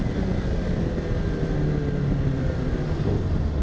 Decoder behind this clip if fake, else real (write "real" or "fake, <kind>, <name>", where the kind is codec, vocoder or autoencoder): real